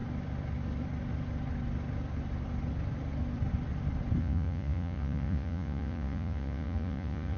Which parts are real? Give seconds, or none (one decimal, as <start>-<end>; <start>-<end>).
0.0-4.2